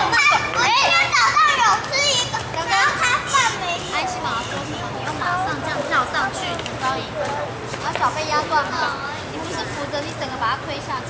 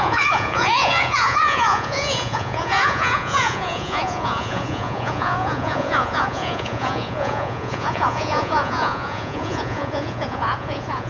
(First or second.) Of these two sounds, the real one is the first